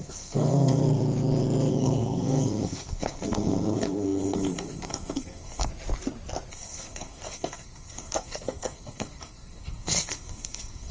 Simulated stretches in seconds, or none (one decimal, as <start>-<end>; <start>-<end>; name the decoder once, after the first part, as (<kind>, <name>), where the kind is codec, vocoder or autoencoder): 0.0-0.8 (codec, SNAC); 1.7-5.7; 6.5-10.9